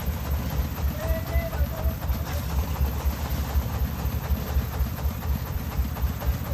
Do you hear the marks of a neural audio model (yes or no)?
yes